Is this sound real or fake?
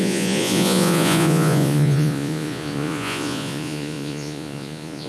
fake